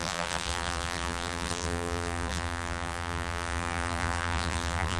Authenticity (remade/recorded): remade